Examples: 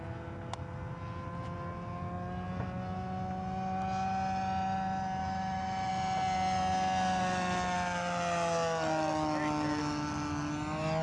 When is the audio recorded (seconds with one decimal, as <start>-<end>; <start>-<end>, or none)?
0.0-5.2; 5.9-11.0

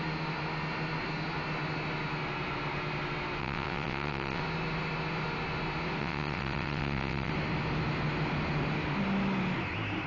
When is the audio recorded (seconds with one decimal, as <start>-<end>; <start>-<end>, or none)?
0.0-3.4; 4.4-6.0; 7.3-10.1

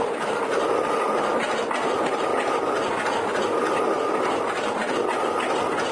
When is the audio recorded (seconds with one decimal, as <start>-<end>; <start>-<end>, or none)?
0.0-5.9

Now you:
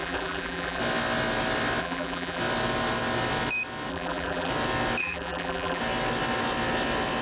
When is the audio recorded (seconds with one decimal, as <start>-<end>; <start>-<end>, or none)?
0.8-1.8; 2.4-3.9; 4.5-5.0; 5.8-7.2

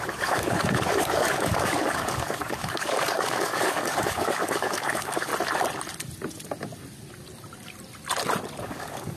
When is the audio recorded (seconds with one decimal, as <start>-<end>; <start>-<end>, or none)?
5.3-8.6

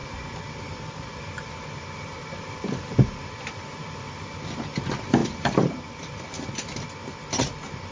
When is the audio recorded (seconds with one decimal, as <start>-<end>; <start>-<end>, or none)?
4.5-5.2; 6.1-7.9

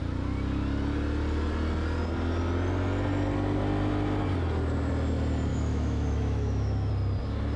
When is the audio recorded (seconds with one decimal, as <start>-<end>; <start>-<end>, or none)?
0.0-5.5; 6.9-7.6